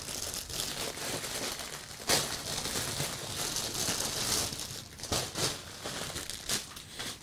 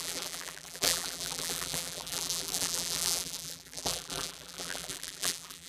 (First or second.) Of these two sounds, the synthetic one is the second